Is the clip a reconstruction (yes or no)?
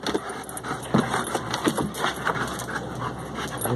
no